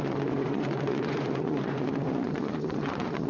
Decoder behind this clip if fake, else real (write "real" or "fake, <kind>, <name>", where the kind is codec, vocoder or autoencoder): fake, vocoder, Vocos